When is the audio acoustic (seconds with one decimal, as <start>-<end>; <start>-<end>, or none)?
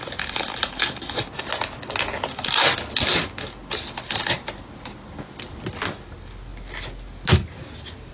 0.0-8.1